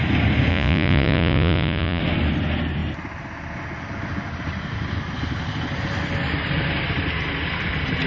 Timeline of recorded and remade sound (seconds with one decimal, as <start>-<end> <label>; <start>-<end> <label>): 0.0-0.5 recorded; 0.5-2.0 remade; 2.0-8.1 recorded